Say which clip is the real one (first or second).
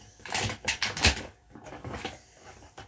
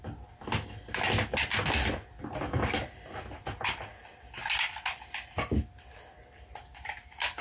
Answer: second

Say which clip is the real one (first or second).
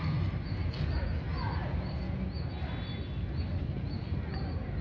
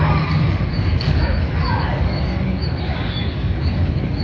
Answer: first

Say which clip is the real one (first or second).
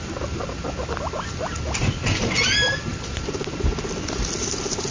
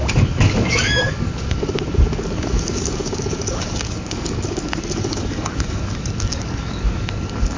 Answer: first